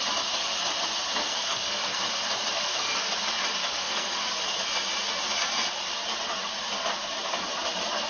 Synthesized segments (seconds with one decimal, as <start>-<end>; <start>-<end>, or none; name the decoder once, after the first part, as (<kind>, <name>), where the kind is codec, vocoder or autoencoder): 1.2-2.1 (codec, SNAC); 2.6-3.1; 3.6-4.2